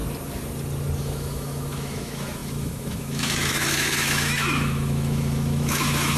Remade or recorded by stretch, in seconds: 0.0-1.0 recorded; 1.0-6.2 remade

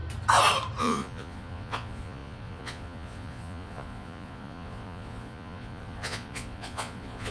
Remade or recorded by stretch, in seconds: 0.0-0.8 recorded; 0.8-7.3 remade

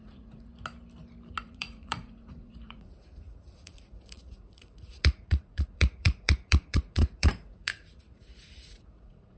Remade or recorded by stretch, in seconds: 0.0-0.5 remade; 0.5-1.4 recorded; 1.4-9.4 remade

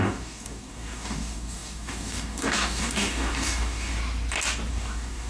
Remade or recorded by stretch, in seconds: 0.0-4.0 remade; 4.0-4.7 recorded; 4.7-5.3 remade